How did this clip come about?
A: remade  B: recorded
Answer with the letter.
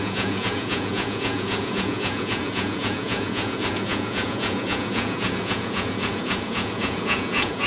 A